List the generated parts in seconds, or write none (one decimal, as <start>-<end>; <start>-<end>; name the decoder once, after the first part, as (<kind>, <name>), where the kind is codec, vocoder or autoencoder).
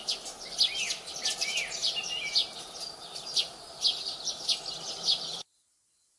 none